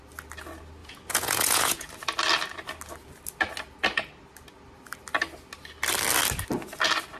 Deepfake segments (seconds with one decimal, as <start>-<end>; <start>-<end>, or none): 0.8-1.9